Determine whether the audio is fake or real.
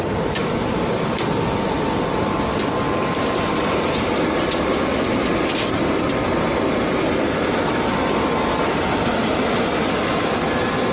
real